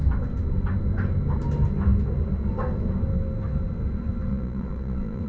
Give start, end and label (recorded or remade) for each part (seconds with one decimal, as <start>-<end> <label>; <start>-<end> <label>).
0.0-4.3 recorded; 4.3-5.3 remade